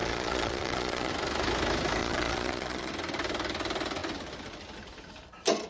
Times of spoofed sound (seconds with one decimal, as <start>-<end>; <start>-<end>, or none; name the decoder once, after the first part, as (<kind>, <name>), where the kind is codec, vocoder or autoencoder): 0.0-1.1 (vocoder, Vocos); 2.0-2.9